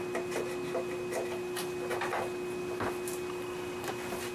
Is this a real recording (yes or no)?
yes